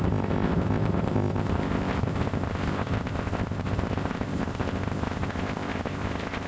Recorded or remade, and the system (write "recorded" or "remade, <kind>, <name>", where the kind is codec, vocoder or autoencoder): remade, codec, ZipCodec